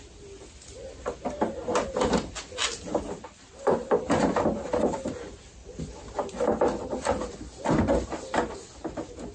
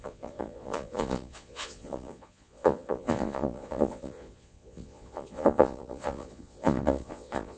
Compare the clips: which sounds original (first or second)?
first